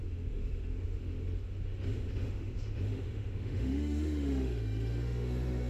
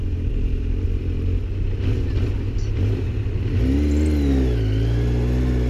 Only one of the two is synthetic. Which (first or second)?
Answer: first